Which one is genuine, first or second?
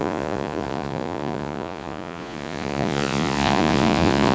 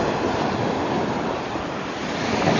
second